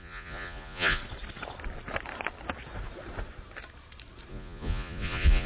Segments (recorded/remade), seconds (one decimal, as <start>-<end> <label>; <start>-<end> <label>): 0.0-1.0 remade; 1.0-4.3 recorded; 4.3-5.5 remade